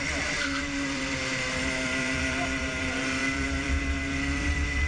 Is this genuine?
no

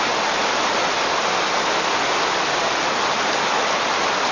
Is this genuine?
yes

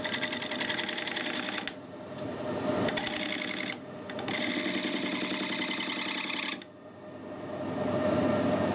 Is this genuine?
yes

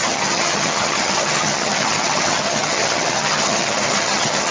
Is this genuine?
no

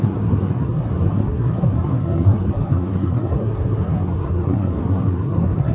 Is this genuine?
no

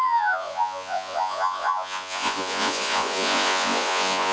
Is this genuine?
no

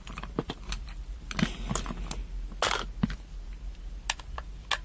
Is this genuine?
yes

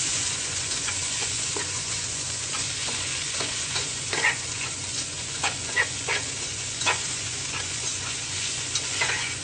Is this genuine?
no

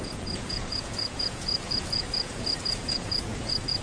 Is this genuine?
no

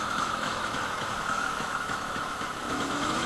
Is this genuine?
no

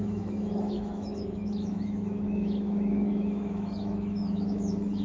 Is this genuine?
no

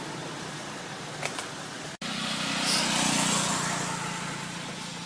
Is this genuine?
yes